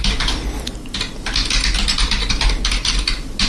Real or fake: real